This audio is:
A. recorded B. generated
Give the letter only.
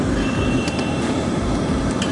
B